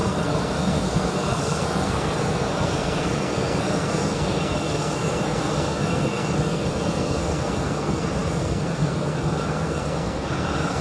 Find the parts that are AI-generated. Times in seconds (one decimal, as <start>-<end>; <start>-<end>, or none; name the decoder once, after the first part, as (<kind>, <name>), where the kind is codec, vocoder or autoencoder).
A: 0.0-10.8 (codec, SNAC)

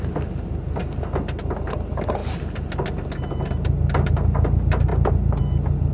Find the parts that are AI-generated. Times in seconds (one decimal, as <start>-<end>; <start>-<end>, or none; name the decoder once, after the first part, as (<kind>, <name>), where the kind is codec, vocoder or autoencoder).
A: none

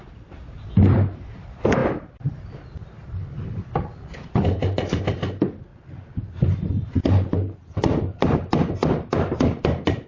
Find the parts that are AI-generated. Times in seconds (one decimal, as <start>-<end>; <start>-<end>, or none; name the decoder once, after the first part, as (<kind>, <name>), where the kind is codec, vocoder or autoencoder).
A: 0.0-1.8 (vocoder, BigVGAN v2); 2.4-5.7

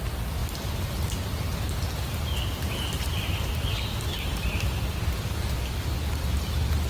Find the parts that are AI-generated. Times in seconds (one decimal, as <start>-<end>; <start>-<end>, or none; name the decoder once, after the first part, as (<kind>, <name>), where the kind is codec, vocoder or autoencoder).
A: none

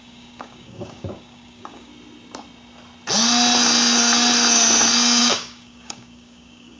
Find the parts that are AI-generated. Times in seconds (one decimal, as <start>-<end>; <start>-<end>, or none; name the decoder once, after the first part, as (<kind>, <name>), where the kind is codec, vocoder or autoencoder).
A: 0.0-1.9 (codec, DAC); 5.2-6.8